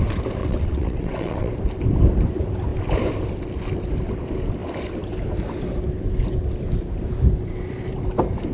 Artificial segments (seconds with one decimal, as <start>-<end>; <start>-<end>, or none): 0.4-1.5